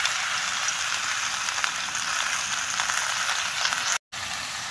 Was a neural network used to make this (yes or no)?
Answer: no